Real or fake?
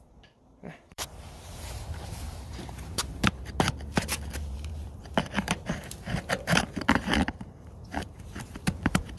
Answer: fake